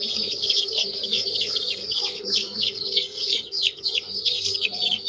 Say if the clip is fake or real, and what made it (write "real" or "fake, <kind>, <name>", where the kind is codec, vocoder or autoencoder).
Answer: fake, codec, SNAC